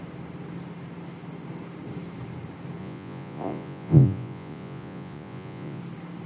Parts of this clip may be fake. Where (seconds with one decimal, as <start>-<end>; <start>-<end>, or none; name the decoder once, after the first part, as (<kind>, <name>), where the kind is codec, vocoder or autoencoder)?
2.8-5.8 (vocoder, Vocos)